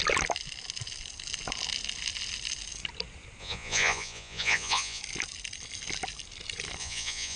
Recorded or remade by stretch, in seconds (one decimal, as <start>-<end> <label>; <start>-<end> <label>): 0.0-3.4 recorded; 3.4-5.0 remade; 5.0-6.8 recorded; 6.8-7.4 remade